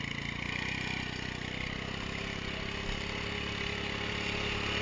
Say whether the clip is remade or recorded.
recorded